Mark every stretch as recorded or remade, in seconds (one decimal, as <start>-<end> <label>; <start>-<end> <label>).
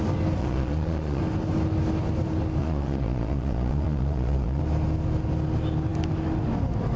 0.0-0.4 recorded; 0.4-1.2 remade; 1.2-2.6 recorded; 2.6-4.6 remade; 4.6-7.0 recorded